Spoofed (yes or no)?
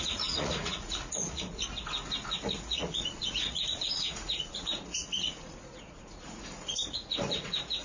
yes